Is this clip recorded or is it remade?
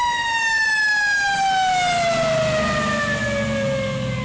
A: recorded